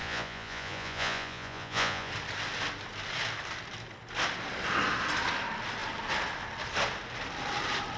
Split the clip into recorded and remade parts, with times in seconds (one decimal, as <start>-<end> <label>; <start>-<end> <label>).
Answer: 0.0-2.1 remade; 2.1-8.0 recorded